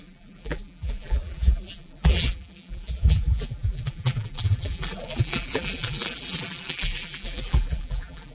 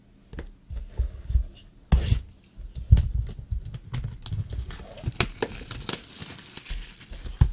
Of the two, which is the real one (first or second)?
second